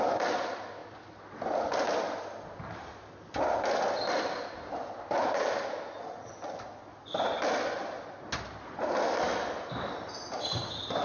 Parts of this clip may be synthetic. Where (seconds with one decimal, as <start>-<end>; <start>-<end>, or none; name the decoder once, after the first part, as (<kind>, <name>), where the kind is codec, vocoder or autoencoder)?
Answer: none